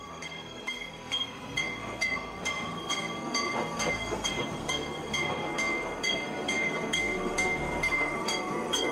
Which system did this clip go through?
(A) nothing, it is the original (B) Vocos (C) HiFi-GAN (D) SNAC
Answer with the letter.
D